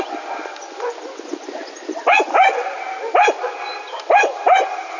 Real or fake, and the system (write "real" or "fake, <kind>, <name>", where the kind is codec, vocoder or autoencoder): real